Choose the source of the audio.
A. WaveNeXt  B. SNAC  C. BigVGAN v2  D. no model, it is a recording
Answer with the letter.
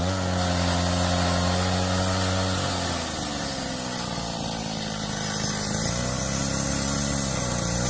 D